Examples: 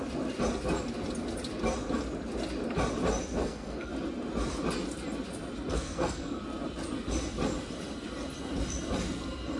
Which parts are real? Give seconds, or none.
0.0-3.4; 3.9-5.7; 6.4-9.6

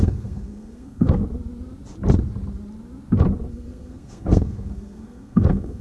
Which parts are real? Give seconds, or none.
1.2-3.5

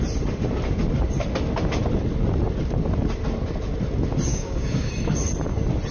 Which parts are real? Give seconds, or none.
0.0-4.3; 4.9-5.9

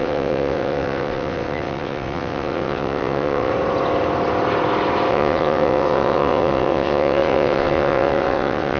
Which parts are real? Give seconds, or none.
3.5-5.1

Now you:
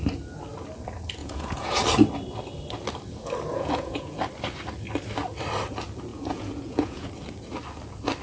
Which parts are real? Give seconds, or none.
0.0-1.2; 1.8-3.5; 4.2-6.1; 7.1-8.2

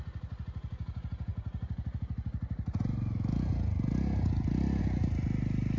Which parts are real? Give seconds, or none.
0.0-5.8

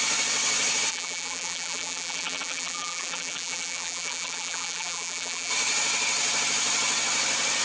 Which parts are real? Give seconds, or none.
0.0-0.9; 5.5-7.6